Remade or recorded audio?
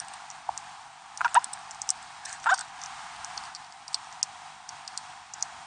recorded